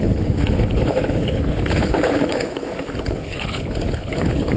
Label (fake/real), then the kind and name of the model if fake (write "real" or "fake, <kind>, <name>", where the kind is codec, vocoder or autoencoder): fake, codec, HILCodec